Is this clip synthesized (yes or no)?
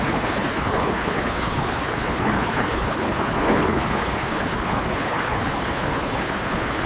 yes